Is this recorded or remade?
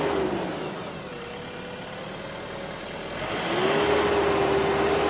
recorded